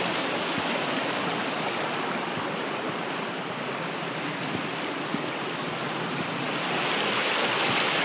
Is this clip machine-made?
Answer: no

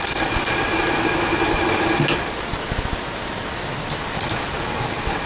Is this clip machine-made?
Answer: no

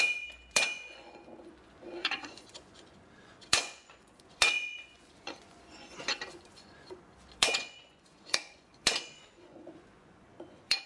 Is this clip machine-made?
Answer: yes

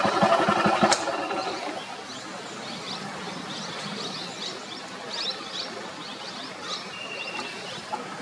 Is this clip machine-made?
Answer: no